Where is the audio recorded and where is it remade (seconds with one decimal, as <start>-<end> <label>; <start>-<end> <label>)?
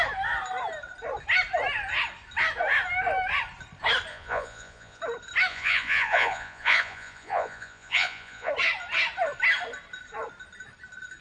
0.0-4.1 recorded; 4.1-5.0 remade; 5.0-5.5 recorded; 5.5-8.5 remade; 8.5-11.2 recorded